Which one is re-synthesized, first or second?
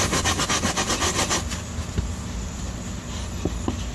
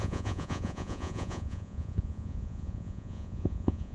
second